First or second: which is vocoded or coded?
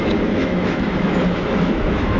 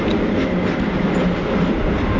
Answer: first